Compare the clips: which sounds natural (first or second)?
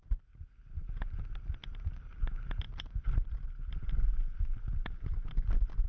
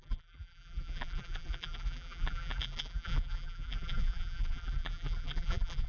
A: first